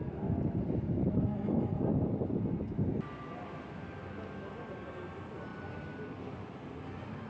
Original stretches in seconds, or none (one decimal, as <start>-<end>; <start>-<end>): 0.0-1.9; 4.9-5.5; 6.0-7.3